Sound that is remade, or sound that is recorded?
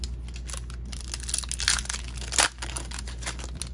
recorded